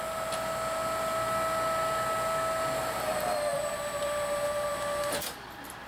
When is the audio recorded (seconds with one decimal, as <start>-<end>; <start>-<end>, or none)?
0.0-3.5; 4.7-5.9